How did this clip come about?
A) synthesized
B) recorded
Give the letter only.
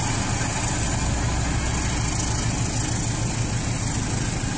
B